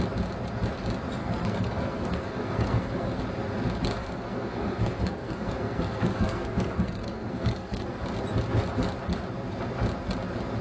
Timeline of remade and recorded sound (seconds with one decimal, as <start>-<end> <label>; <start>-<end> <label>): 0.0-1.2 recorded; 1.2-3.2 remade; 3.2-4.0 recorded; 4.0-8.0 remade; 8.0-10.6 recorded